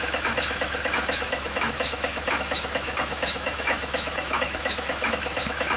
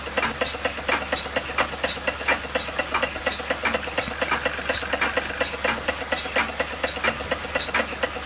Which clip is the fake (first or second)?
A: first